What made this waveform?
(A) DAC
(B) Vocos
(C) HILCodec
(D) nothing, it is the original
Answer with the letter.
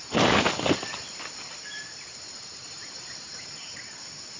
D